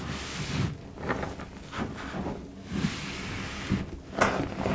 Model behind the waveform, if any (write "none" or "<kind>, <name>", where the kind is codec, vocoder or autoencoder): none